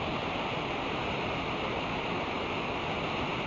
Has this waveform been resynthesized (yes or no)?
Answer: no